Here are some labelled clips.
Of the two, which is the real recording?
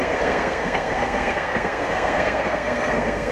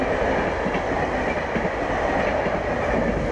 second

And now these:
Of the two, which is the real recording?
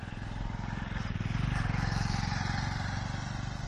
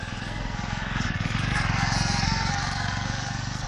first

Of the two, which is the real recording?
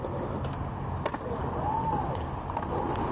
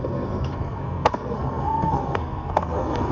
first